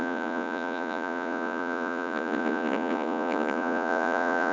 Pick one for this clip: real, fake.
fake